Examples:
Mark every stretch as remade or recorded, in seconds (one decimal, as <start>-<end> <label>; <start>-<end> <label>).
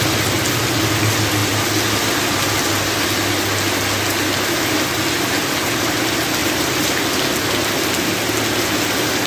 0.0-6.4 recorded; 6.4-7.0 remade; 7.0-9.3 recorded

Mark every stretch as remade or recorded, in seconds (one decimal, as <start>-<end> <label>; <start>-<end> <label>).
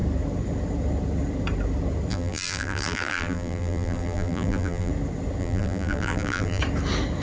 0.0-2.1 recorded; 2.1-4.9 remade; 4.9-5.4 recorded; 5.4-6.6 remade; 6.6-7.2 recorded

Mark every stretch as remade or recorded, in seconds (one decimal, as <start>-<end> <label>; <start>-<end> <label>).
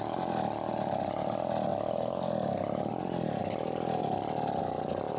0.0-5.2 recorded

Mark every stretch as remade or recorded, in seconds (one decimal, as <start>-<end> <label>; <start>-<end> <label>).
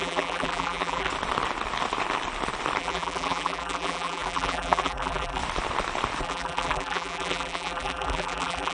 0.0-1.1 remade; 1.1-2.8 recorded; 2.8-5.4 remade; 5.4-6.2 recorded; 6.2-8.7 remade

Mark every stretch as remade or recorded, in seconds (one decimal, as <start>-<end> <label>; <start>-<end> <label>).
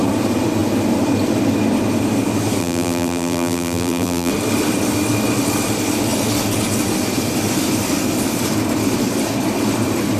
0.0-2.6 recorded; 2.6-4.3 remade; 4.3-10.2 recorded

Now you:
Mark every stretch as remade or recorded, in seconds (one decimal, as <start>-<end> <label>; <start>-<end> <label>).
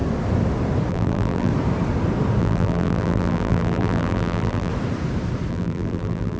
0.0-0.9 recorded; 0.9-1.5 remade; 1.5-2.4 recorded; 2.4-4.7 remade; 4.7-5.5 recorded; 5.5-6.4 remade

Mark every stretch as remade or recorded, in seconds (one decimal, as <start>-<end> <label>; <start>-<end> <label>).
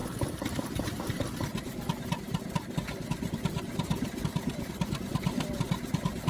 0.0-0.5 remade; 0.5-3.9 recorded; 3.9-5.7 remade; 5.7-6.3 recorded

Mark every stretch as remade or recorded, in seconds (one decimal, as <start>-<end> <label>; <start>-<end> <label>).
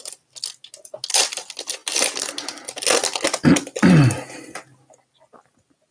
0.0-5.9 recorded